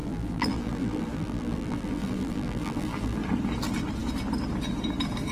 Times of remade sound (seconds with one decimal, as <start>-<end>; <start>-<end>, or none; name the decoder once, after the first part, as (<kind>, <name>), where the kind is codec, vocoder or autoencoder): 0.0-3.2 (vocoder, BigVGAN v2)